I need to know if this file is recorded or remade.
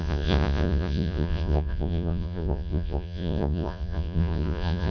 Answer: remade